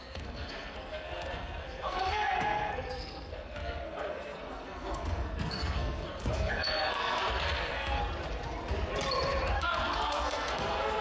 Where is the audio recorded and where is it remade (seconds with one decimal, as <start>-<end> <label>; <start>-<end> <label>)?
0.0-8.0 remade; 8.0-9.6 recorded; 9.6-11.0 remade